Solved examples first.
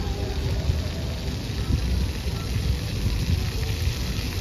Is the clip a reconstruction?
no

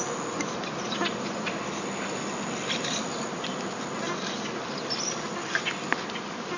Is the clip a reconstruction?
no